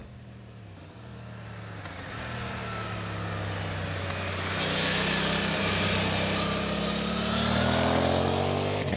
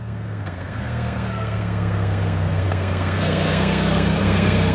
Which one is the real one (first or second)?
first